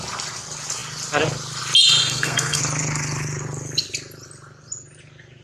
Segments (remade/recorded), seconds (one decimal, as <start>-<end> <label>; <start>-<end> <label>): 0.0-2.0 recorded; 2.0-2.6 remade; 2.6-5.4 recorded